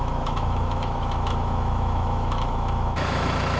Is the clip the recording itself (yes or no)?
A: no